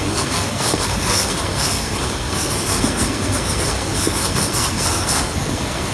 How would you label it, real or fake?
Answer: fake